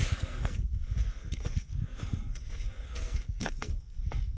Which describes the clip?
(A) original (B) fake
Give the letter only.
B